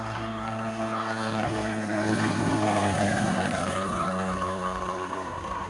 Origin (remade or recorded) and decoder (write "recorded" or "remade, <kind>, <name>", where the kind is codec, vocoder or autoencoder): remade, codec, SNAC